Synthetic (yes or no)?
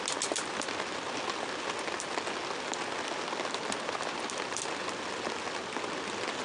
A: no